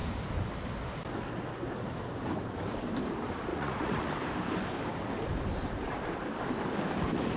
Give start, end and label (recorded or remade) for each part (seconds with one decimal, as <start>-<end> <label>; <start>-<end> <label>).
0.0-3.5 recorded; 3.5-4.1 remade; 4.1-7.4 recorded